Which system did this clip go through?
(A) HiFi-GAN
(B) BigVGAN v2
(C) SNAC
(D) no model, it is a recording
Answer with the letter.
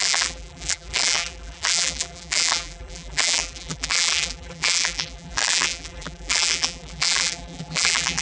B